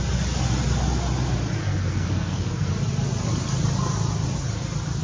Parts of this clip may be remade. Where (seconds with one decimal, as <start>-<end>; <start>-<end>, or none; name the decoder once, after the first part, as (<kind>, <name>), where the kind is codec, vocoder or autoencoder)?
1.6-2.7 (codec, SNAC)